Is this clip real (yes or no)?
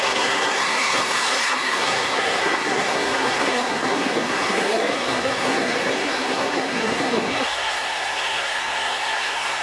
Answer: no